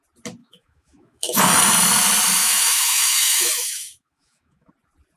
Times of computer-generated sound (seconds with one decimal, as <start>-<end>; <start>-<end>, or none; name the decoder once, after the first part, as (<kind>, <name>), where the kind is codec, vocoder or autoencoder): 0.4-1.4 (autoencoder, DAC-VAE); 2.4-4.7